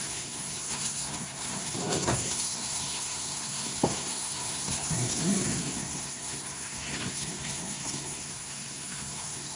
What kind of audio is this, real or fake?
fake